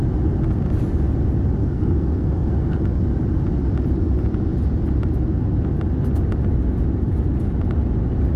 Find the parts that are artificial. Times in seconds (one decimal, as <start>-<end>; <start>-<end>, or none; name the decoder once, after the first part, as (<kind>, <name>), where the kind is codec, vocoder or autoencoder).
1.6-2.8 (codec, SNAC)

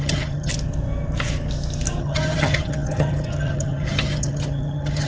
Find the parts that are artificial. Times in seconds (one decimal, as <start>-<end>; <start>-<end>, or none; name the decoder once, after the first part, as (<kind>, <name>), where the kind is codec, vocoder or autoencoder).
0.0-0.5 (vocoder, HiFi-GAN); 2.0-5.1

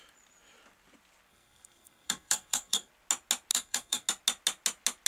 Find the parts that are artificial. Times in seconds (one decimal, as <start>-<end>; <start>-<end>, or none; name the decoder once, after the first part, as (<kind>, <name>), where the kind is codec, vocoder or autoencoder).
1.3-2.9 (codec, SNAC); 3.5-4.1

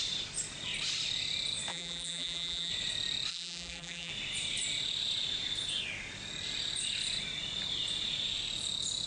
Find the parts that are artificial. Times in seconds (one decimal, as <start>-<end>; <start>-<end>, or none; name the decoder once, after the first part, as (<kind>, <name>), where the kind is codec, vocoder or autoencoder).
1.7-2.7 (vocoder, BigVGAN v2); 3.3-4.1

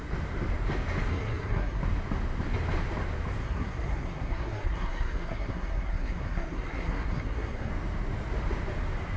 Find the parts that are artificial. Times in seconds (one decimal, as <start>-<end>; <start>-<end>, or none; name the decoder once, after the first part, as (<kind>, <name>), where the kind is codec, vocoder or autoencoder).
1.1-1.8 (codec, SNAC); 3.4-7.7

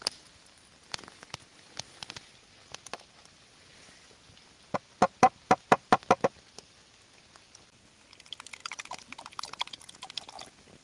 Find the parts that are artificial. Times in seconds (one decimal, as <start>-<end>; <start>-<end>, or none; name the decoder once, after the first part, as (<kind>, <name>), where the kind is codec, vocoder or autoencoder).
8.6-10.2 (vocoder, BigVGAN v2)

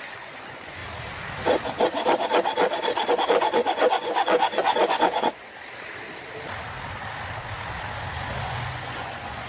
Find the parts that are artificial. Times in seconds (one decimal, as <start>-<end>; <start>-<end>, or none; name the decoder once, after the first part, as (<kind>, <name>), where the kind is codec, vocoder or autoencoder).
0.0-0.8 (vocoder, Vocos); 3.1-5.4; 8.4-9.5